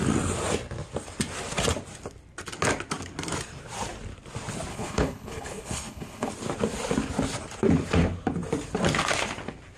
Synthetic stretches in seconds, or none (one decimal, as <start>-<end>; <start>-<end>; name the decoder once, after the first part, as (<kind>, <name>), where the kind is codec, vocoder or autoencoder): 4.7-6.3 (codec, HILCodec)